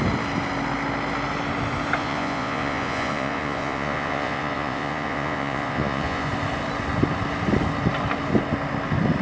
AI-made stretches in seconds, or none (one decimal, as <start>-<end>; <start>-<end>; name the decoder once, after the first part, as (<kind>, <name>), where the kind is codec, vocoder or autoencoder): 2.0-6.3 (vocoder, Vocos)

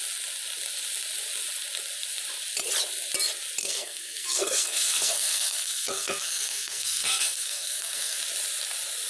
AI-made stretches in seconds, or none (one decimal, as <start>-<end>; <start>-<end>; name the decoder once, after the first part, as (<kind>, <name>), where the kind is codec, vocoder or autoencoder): 3.6-8.2 (codec, SNAC)

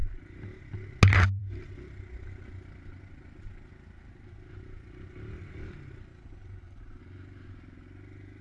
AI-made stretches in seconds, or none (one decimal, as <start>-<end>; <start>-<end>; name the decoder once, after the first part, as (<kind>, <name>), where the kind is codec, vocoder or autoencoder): 6.1-7.0 (vocoder, BigVGAN v2)

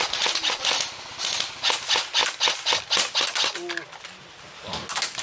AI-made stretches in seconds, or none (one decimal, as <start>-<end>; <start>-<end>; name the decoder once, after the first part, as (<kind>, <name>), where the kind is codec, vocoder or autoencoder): none